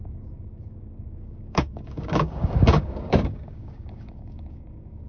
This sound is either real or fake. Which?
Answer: fake